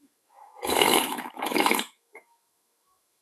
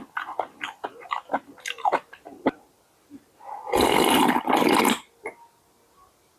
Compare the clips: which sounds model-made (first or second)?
first